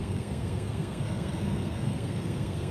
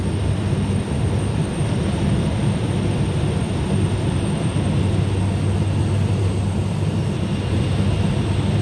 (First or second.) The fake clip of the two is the first